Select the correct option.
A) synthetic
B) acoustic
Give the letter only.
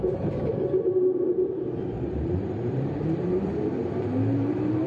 A